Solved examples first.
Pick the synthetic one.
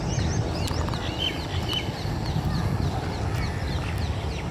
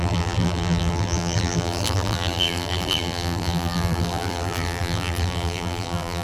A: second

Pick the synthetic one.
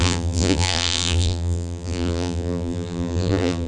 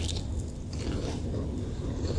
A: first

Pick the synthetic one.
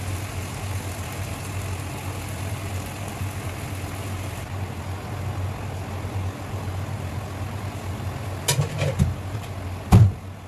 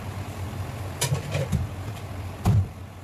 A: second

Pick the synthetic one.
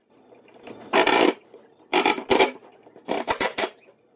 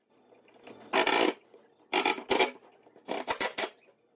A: first